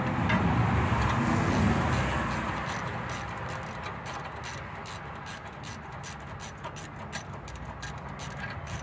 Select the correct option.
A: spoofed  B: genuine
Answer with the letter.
B